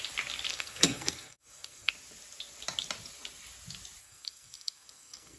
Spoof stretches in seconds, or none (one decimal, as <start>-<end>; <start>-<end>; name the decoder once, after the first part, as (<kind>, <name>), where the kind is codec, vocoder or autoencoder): 0.5-1.9 (codec, SNAC); 4.0-5.4

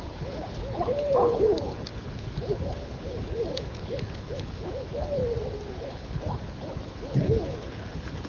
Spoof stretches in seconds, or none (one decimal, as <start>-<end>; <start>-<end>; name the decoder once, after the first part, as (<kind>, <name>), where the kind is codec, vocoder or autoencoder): 0.0-5.2 (codec, HILCodec); 5.7-8.3

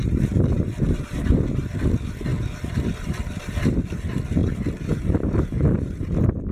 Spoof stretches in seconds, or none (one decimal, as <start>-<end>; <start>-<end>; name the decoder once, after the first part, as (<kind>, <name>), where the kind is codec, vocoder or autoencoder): none

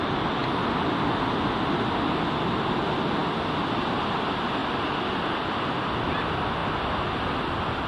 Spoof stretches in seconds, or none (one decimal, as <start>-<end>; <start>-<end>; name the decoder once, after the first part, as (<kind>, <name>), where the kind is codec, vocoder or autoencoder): none